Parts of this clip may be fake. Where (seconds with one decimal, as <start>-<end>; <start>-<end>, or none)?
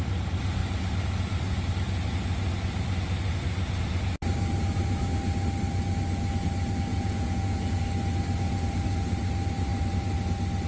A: 6.9-7.8